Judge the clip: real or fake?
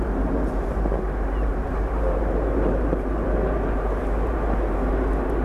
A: fake